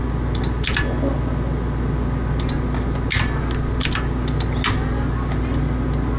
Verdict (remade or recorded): recorded